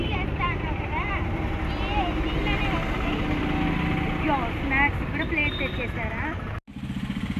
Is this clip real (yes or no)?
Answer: yes